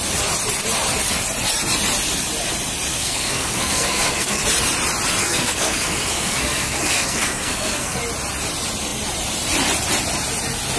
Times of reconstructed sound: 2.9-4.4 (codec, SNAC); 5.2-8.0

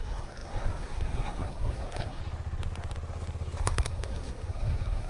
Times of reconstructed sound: 0.0-2.2 (codec, SNAC); 3.6-5.1

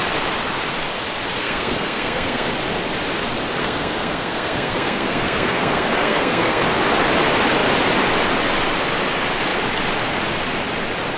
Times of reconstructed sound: 1.4-2.5 (codec, SNAC); 3.6-6.6

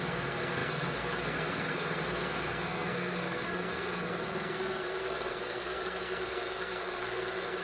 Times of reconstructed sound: 0.0-7.6 (codec, SNAC)

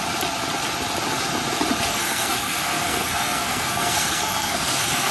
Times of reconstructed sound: 1.9-5.1 (codec, SNAC)

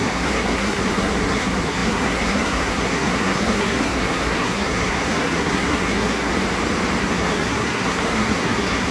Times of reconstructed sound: 0.0-6.3 (codec, SNAC); 7.0-8.9